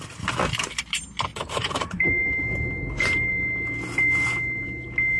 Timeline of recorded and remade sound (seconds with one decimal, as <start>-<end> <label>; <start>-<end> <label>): 0.0-1.3 recorded; 1.3-3.3 remade; 3.3-5.2 recorded